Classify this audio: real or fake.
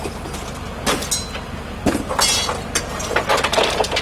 real